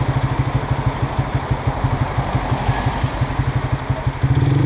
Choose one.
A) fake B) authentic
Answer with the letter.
B